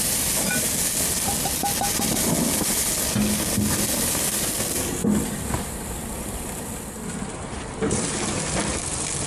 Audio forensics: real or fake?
real